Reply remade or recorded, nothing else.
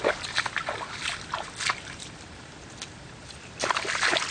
recorded